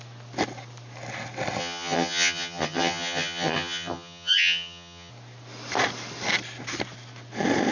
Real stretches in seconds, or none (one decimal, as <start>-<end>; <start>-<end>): 0.0-1.6; 5.1-7.7